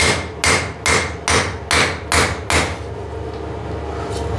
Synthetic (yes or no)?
no